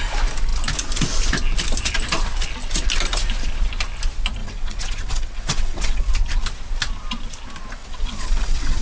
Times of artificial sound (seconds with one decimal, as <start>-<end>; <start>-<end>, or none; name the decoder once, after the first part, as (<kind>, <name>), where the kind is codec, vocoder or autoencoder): 4.4-6.0 (vocoder, WaveNeXt); 7.8-8.8